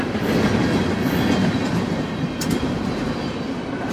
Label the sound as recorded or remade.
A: recorded